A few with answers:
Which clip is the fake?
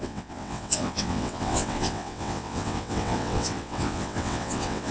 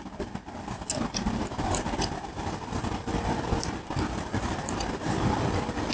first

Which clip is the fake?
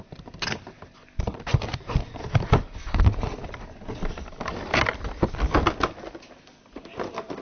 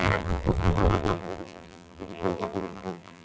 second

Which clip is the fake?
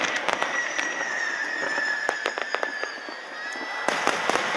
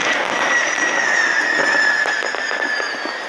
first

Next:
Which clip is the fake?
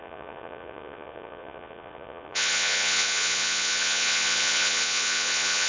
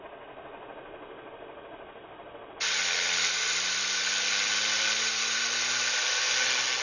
first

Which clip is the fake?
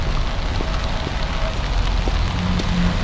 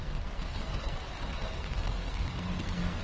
second